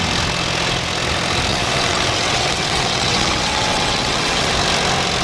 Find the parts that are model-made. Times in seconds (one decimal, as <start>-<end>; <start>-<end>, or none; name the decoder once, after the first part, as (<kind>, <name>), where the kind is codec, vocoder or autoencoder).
1.5-4.5 (vocoder, WaveNeXt)